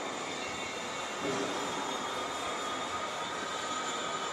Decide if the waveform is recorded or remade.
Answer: recorded